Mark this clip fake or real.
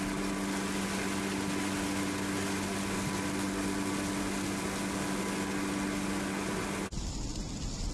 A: real